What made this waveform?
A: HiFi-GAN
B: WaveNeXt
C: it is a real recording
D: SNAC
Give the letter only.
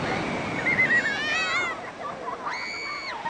C